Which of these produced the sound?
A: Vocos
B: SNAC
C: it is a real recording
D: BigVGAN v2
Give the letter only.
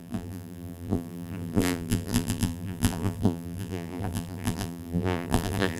D